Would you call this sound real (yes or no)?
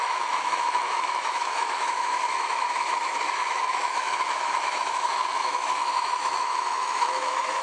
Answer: no